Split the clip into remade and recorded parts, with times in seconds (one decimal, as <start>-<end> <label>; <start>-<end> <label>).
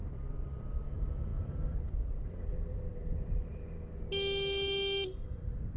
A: 0.0-0.8 remade; 0.8-1.3 recorded; 1.3-3.6 remade; 3.6-5.8 recorded